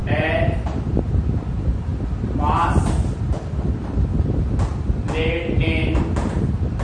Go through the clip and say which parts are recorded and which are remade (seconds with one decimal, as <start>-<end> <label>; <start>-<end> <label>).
0.0-1.0 remade; 1.0-6.8 recorded